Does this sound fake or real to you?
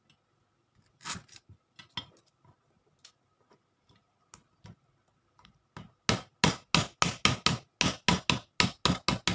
real